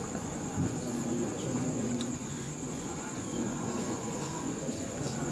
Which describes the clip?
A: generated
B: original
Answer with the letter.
A